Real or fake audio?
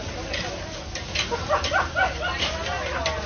real